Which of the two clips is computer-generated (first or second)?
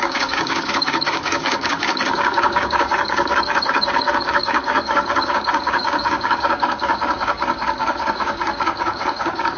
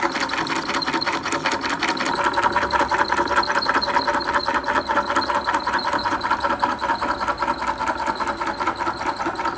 first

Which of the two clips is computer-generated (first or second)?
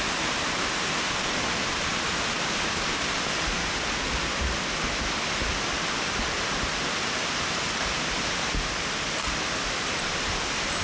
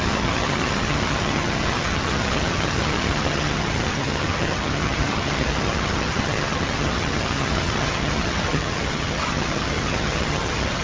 second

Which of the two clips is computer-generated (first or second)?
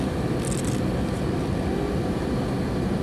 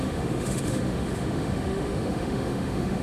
second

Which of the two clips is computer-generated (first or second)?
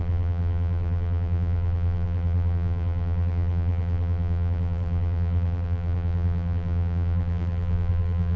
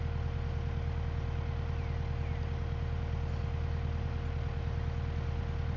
first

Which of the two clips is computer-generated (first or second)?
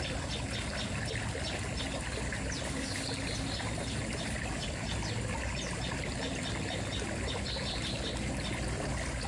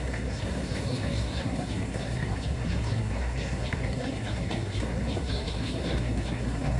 second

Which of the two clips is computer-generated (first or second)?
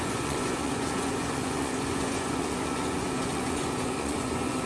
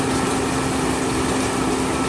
first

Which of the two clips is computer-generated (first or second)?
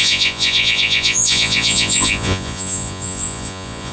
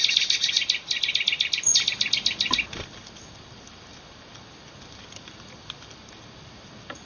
first